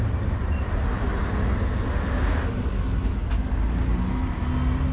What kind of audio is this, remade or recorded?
recorded